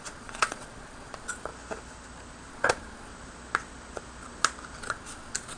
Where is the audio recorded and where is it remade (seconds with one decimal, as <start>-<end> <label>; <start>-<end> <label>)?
0.0-1.5 remade; 1.5-2.5 recorded; 2.5-3.1 remade; 3.1-4.8 recorded; 4.8-5.6 remade

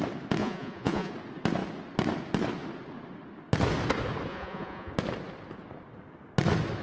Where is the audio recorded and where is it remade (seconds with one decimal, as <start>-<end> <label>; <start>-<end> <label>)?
0.0-0.4 recorded; 0.4-1.1 remade; 1.1-4.3 recorded; 4.3-4.9 remade; 4.9-6.8 recorded

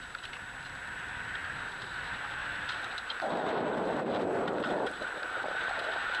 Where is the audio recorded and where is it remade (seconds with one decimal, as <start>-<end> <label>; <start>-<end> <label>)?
0.0-2.4 recorded; 2.4-6.2 remade

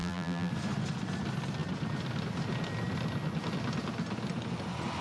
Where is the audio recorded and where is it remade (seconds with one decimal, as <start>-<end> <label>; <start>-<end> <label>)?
0.0-0.5 remade; 0.5-5.0 recorded